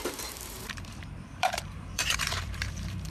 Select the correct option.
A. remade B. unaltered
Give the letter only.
A